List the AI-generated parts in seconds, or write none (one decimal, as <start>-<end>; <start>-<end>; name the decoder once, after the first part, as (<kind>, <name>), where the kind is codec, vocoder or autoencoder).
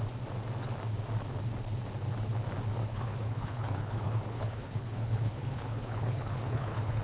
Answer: 2.8-7.0 (codec, HILCodec)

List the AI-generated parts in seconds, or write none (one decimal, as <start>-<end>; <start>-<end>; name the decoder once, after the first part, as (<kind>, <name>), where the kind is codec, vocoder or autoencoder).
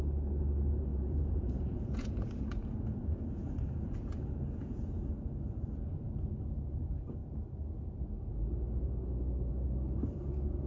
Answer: 0.9-5.1 (vocoder, Vocos)